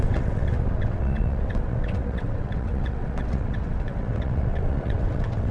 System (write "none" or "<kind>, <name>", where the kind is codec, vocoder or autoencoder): vocoder, WaveNeXt